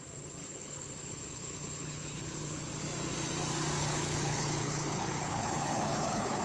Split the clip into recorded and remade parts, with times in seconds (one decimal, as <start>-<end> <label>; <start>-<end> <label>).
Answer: 0.0-0.4 recorded; 0.4-2.6 remade; 2.6-3.8 recorded; 3.8-6.4 remade